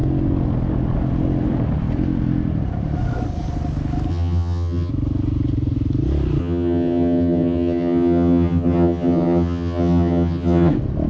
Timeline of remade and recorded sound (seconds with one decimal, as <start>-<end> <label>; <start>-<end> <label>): 0.0-4.1 recorded; 4.1-4.9 remade; 4.9-6.4 recorded; 6.4-10.7 remade; 10.7-11.1 recorded

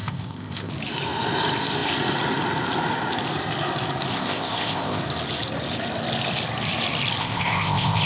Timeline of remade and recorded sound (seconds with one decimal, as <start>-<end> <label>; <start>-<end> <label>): 0.0-0.7 remade; 0.7-4.1 recorded; 4.1-5.0 remade; 5.0-7.2 recorded; 7.2-8.1 remade